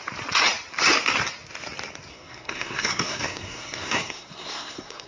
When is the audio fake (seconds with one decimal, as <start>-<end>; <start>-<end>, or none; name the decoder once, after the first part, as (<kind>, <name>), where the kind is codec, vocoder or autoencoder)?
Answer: 2.1-5.1 (codec, SNAC)